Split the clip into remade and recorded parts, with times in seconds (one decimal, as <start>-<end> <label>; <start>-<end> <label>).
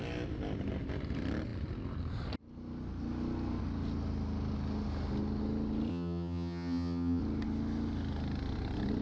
0.0-5.9 recorded; 5.9-7.2 remade; 7.2-9.0 recorded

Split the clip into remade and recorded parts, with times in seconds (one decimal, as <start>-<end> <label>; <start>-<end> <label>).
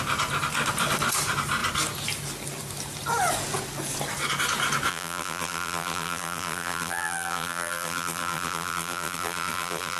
0.0-4.9 recorded; 4.9-10.0 remade